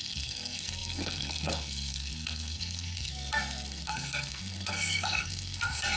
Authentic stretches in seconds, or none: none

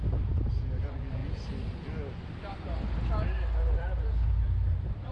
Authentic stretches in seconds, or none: 0.0-5.1

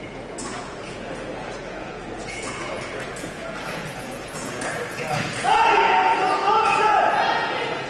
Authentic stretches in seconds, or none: none

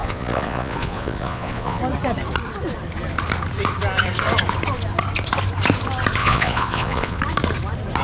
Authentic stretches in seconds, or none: 1.8-6.2; 7.2-8.0

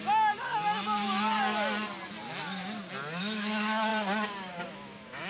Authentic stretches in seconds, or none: 0.0-3.2; 3.9-4.7

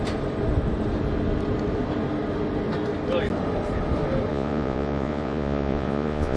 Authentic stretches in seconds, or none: 0.0-4.3

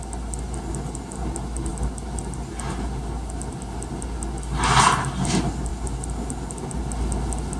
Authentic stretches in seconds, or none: 0.0-7.6